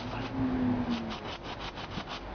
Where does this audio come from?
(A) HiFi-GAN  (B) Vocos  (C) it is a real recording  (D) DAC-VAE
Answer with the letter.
C